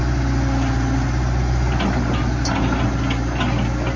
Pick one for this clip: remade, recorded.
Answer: recorded